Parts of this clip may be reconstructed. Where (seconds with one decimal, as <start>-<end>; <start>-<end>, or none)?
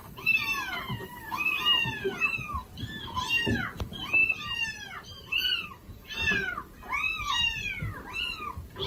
none